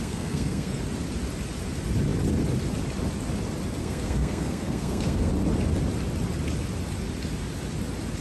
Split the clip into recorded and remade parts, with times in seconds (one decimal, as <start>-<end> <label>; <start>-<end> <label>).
0.0-0.8 remade; 0.8-3.8 recorded; 3.8-5.3 remade; 5.3-8.2 recorded